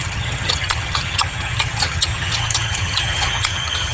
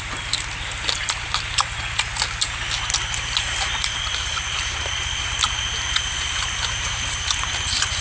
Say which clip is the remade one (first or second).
first